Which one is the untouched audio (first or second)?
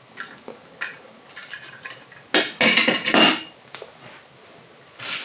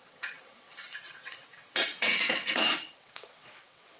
first